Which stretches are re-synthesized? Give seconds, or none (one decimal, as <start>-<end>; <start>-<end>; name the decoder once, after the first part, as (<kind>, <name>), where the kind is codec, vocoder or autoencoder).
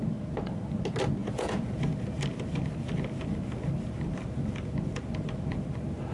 1.2-1.8 (vocoder, Vocos)